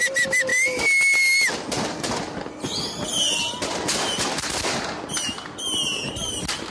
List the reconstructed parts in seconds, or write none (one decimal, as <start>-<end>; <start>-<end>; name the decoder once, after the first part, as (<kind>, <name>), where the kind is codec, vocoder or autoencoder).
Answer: none